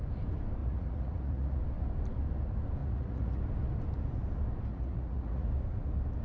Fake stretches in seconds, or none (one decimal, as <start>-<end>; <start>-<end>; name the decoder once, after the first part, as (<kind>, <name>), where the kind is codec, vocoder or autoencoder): 0.6-1.6 (vocoder, Vocos); 2.8-3.4; 4.7-5.5